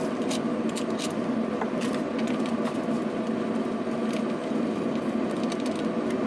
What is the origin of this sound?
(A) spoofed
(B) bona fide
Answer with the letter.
B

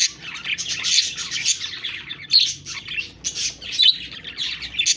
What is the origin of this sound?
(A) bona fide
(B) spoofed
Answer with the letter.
A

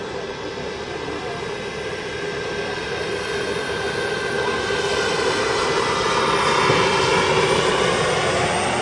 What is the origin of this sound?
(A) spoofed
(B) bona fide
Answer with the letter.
B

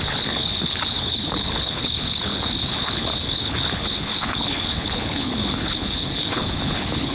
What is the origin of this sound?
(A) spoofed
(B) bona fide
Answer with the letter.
A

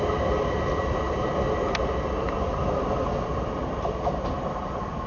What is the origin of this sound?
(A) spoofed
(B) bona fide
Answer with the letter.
B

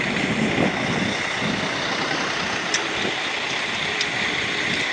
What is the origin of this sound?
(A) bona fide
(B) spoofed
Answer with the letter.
A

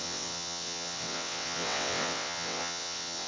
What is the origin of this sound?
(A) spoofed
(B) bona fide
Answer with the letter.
A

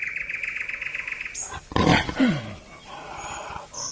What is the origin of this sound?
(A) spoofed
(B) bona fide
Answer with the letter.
B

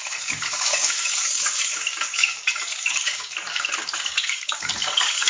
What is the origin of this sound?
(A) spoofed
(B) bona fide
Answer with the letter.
A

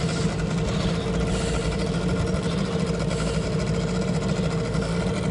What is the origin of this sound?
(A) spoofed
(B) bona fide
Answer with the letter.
B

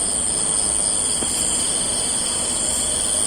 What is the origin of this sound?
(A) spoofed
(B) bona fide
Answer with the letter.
B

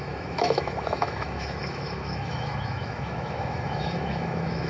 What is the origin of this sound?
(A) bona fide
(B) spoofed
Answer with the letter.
B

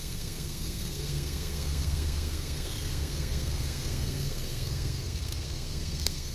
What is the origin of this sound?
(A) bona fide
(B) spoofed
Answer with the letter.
B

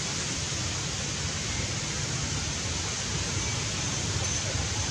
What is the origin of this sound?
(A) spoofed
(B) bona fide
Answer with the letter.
B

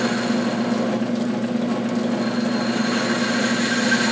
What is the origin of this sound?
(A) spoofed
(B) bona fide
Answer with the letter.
B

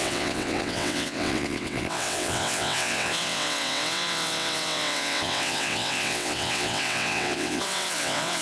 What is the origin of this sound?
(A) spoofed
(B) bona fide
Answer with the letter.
A